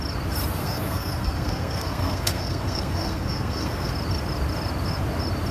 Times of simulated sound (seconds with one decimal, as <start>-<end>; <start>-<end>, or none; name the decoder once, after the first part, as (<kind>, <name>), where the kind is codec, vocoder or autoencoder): 0.6-3.9 (codec, SNAC)